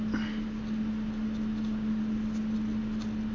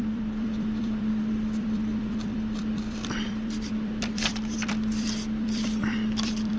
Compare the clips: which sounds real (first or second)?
first